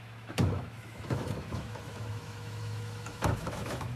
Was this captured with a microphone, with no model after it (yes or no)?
no